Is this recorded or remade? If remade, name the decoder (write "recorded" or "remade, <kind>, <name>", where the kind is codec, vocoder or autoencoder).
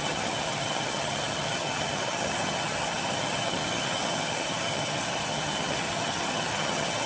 remade, vocoder, HiFi-GAN